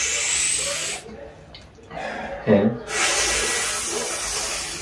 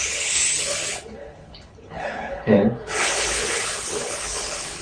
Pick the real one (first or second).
first